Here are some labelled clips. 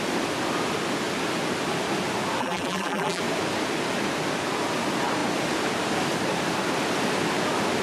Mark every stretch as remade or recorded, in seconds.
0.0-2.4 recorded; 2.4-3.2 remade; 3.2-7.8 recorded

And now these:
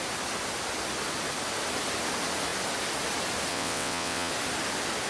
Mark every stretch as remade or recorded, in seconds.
0.0-3.5 recorded; 3.5-4.3 remade; 4.3-5.1 recorded

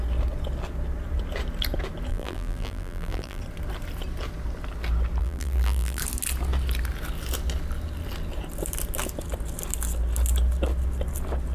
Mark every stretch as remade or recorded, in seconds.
0.0-2.1 recorded; 2.1-3.4 remade; 3.4-5.2 recorded; 5.2-6.0 remade; 6.0-11.5 recorded

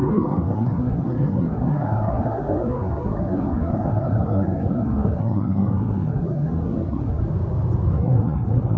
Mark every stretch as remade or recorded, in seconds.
0.0-7.2 remade; 7.2-7.9 recorded; 7.9-8.8 remade

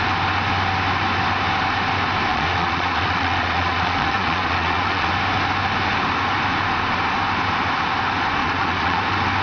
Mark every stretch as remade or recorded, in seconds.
0.0-2.3 recorded; 2.3-5.1 remade; 5.1-8.4 recorded; 8.4-9.0 remade; 9.0-9.4 recorded

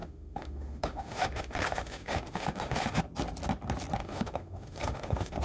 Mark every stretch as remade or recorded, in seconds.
0.0-3.0 remade; 3.0-4.0 recorded; 4.0-5.4 remade

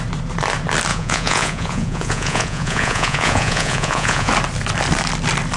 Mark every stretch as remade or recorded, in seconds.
0.0-0.9 recorded; 0.9-4.3 remade; 4.3-5.6 recorded